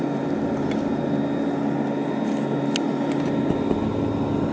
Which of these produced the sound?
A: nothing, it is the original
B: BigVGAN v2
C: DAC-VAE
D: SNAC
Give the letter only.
A